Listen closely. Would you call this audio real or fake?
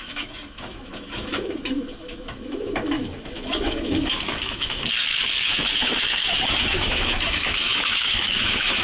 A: fake